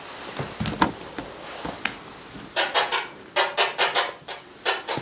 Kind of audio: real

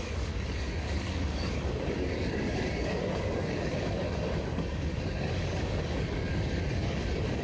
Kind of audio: fake